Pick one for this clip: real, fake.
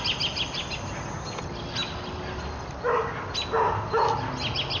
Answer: real